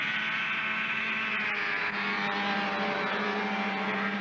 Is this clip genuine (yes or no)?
yes